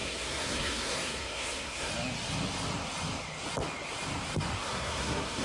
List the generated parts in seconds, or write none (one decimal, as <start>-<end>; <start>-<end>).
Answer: 0.0-1.9; 4.6-5.4